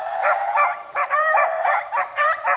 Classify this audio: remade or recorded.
remade